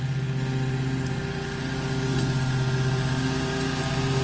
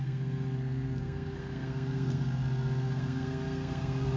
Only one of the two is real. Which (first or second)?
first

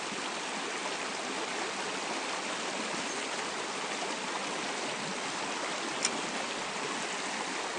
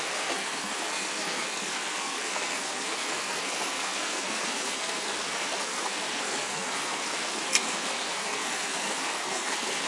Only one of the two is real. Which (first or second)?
first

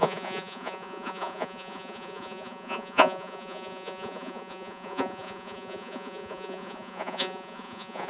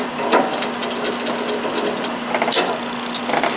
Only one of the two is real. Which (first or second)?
second